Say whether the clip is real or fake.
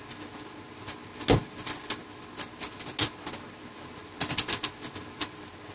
real